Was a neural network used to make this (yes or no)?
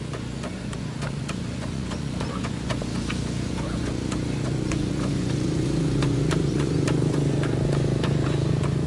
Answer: yes